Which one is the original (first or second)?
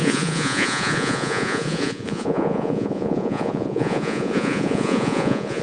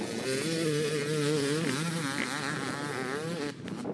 second